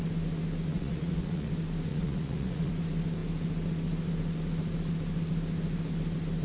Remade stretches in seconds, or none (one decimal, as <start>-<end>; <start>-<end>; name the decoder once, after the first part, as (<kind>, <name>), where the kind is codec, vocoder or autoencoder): 0.7-1.5 (vocoder, Vocos); 1.9-2.7